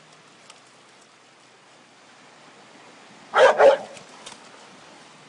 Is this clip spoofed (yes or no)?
no